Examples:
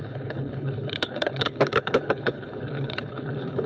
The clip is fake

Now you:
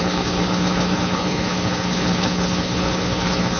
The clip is fake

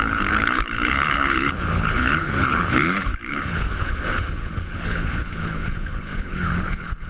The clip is fake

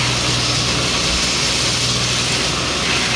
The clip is real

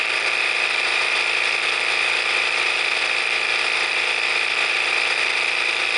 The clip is real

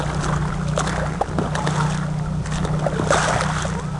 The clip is real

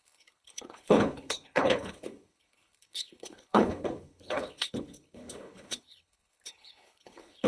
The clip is fake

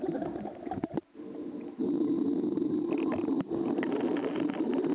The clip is real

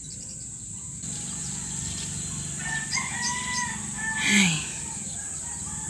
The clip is real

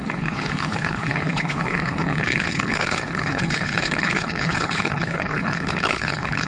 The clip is fake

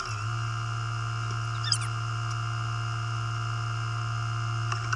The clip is real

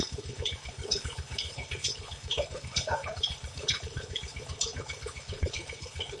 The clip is fake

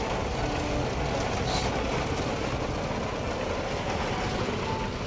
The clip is real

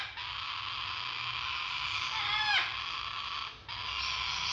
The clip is real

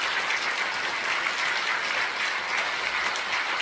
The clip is real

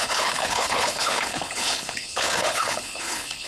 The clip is fake